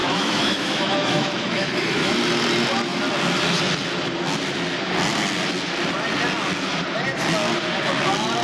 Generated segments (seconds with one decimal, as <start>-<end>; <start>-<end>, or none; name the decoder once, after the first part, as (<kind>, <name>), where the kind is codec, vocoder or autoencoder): 0.0-2.1 (autoencoder, DAC-VAE)